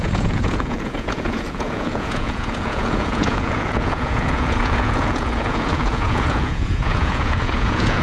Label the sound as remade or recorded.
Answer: remade